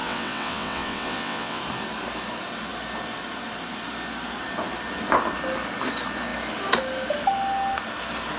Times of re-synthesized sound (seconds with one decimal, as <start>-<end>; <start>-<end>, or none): 0.0-1.6